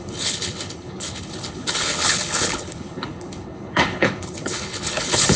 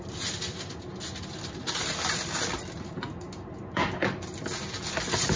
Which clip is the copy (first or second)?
first